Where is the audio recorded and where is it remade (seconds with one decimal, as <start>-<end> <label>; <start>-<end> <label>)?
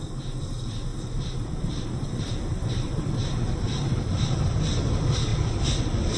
0.0-0.9 recorded; 0.9-4.6 remade; 4.6-5.3 recorded; 5.3-6.2 remade